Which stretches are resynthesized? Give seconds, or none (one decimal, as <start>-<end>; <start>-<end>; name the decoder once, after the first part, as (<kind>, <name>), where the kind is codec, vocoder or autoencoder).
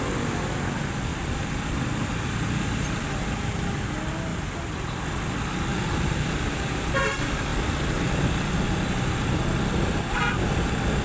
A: 1.1-3.8 (vocoder, BigVGAN v2); 4.3-5.0; 5.7-6.9